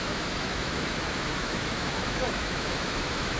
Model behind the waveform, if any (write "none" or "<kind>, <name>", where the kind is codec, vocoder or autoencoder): autoencoder, DAC-VAE